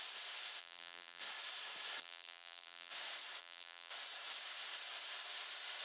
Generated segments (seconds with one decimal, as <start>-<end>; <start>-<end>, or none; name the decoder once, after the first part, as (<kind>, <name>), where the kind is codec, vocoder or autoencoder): 0.6-1.2 (vocoder, BigVGAN v2); 2.0-2.9; 3.4-3.9

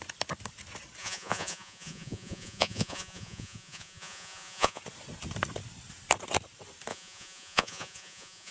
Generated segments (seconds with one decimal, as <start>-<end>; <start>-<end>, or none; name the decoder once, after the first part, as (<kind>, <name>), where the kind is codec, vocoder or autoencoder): 1.0-4.8 (vocoder, Vocos); 6.9-8.5